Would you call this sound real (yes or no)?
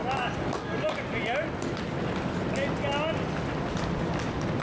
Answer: yes